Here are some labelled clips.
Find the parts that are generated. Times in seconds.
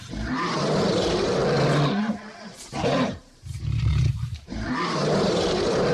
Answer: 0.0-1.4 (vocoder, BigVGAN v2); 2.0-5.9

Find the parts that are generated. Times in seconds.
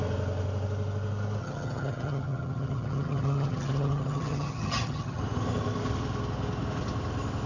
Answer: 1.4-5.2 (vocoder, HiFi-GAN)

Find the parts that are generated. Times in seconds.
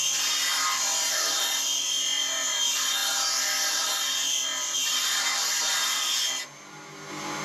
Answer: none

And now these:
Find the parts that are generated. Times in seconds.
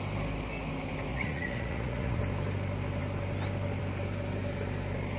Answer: 1.1-2.2 (vocoder, Vocos)